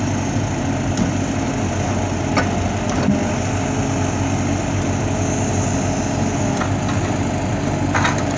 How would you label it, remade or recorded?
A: recorded